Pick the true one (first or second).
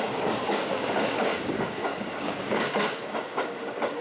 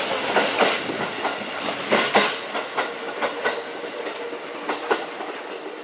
second